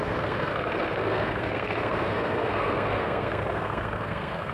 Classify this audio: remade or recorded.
remade